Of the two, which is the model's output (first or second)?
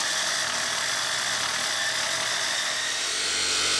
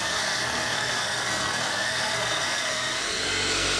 second